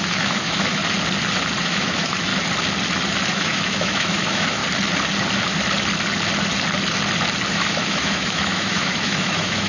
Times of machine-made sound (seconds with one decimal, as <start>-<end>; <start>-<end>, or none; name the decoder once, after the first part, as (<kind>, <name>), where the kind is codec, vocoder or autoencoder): 0.0-0.8 (autoencoder, DAC-VAE); 1.6-2.3; 3.3-4.6; 7.5-9.7